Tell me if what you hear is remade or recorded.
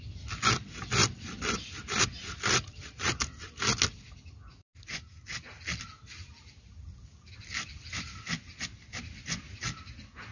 recorded